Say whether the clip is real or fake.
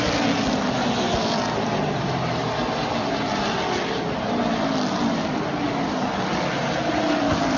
real